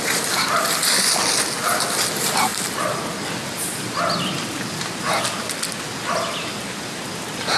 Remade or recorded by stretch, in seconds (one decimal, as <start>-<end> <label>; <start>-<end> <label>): 0.0-7.6 recorded